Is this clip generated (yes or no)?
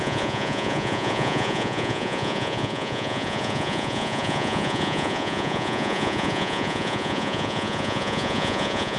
yes